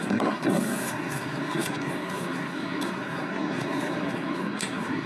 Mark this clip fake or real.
fake